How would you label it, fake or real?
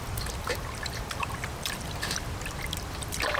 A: fake